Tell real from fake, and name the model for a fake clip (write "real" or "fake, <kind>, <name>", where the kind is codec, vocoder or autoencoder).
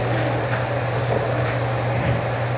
real